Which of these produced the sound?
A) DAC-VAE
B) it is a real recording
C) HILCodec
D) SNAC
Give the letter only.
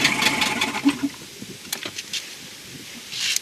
B